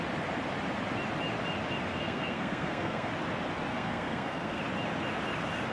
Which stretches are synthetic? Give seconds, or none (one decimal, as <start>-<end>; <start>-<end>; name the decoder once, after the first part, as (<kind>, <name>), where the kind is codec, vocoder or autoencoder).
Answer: 1.9-3.1 (codec, SNAC); 3.7-4.6